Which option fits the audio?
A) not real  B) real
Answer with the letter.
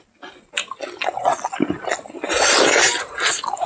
B